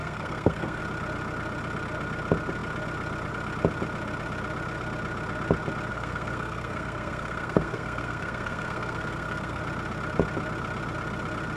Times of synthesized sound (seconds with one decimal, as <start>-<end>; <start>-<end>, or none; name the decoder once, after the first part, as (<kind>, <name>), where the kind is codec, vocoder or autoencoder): 0.0-0.8 (codec, SNAC); 5.9-9.6